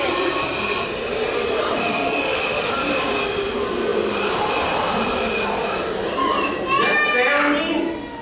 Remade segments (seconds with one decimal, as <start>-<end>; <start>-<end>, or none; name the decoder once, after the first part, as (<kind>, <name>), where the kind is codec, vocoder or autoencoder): 1.8-2.7 (autoencoder, DAC-VAE)